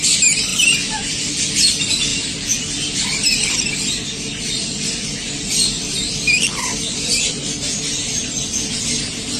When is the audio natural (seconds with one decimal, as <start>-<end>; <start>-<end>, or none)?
0.0-0.5; 1.1-2.1; 2.7-6.7; 8.4-9.4